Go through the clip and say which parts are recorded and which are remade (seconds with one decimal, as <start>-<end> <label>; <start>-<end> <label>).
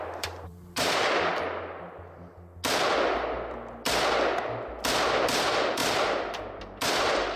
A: 0.0-1.3 remade; 1.3-4.9 recorded; 4.9-5.8 remade; 5.8-6.4 recorded; 6.4-7.4 remade